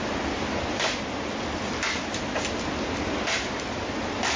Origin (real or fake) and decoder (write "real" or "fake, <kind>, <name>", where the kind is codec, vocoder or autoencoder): real